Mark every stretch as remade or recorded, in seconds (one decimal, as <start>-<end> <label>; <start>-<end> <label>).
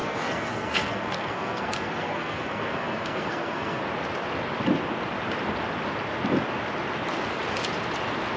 0.0-3.8 remade; 3.8-8.4 recorded